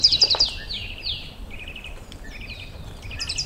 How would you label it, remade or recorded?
remade